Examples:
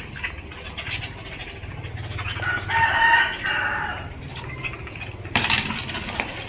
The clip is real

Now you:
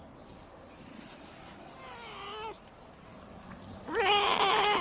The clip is real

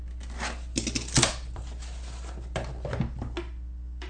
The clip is real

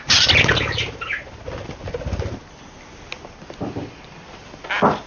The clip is real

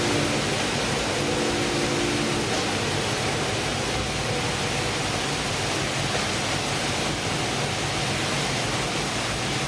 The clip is real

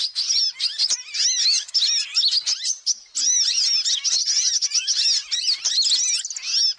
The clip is real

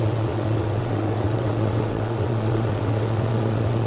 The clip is fake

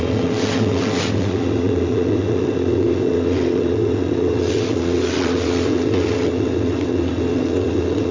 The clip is fake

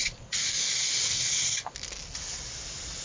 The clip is real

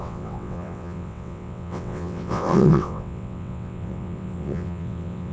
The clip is fake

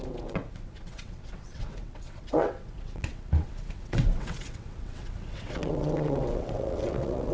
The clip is fake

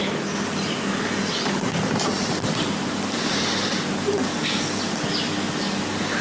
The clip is real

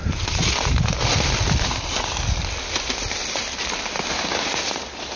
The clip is real